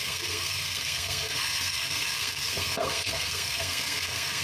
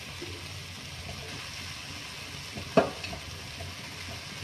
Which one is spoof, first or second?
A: first